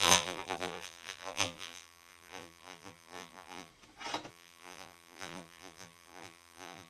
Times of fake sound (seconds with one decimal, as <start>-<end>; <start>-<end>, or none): 0.0-3.7; 4.3-6.9